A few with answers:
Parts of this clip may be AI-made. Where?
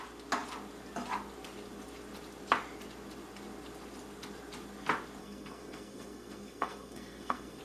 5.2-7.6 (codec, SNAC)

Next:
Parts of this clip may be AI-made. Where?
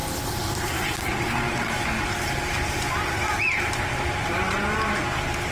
none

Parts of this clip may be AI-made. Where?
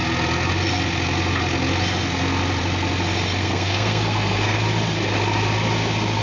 3.4-4.6 (codec, SNAC)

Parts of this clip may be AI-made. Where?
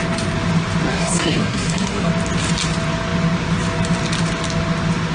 0.9-2.1 (codec, SNAC)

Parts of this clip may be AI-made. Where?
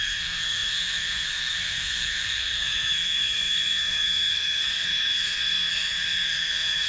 0.0-6.9 (codec, SNAC)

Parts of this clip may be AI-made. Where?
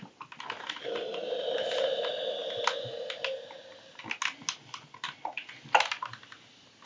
none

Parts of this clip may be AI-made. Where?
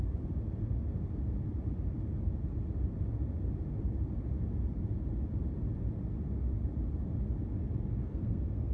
8.0-8.7 (codec, SNAC)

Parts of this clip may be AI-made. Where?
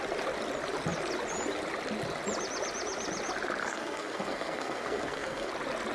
3.6-5.5 (codec, SNAC)